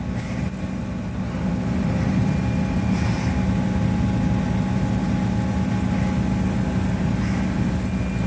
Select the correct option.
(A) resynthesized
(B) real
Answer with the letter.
B